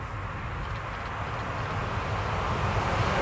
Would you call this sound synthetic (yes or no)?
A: no